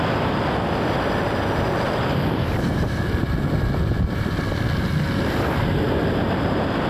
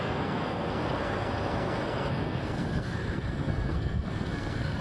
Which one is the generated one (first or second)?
second